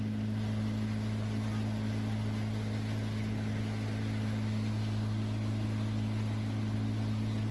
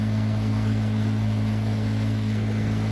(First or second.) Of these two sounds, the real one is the first